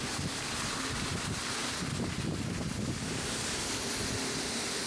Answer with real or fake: real